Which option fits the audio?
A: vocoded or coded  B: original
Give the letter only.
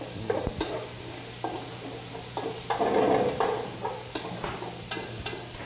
B